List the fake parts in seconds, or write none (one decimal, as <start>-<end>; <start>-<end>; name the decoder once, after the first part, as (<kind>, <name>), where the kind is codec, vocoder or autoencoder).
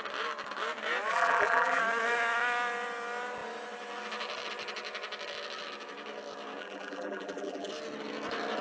1.1-1.8 (vocoder, BigVGAN v2); 6.6-7.7